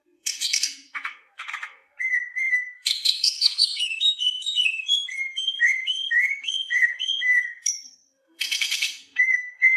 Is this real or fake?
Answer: fake